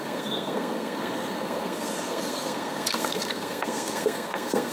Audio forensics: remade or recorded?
remade